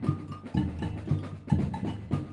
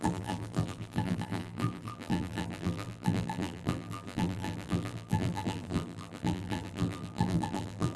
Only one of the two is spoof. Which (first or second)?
second